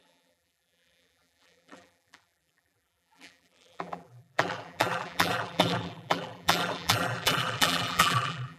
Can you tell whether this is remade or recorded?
remade